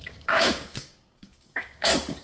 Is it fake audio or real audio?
fake